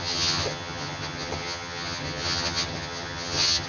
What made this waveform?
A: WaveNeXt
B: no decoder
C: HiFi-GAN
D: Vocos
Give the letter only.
C